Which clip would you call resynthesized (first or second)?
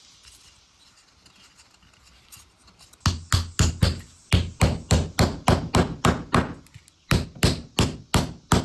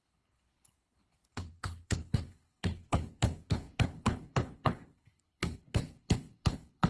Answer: second